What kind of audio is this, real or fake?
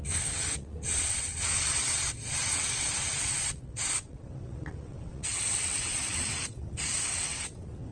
fake